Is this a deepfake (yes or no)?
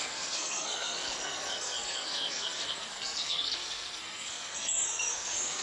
yes